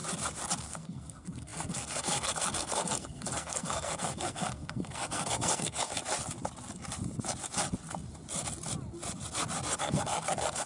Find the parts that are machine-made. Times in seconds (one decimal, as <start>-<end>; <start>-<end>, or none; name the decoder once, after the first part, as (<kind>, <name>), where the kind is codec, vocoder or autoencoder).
0.6-5.9 (codec, SNAC); 9.8-10.7